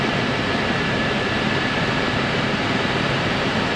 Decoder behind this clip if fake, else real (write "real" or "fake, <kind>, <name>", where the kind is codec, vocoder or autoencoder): fake, vocoder, BigVGAN v2